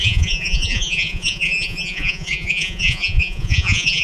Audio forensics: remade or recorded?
remade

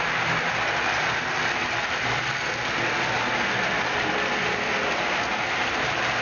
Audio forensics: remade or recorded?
recorded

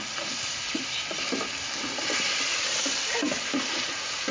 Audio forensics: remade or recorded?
recorded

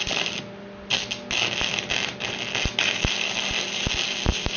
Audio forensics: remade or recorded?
recorded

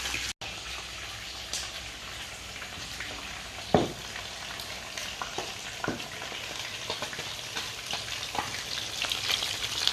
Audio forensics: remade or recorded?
recorded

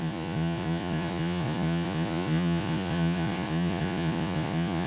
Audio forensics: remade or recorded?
remade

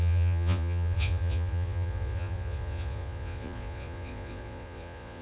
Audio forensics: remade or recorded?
remade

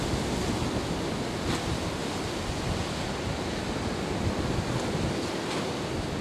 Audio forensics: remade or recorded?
recorded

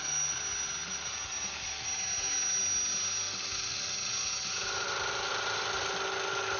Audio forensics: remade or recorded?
recorded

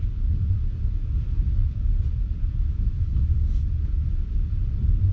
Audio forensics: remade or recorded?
recorded